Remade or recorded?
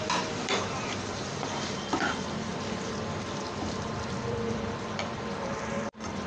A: remade